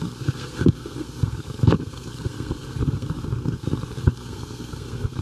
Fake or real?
fake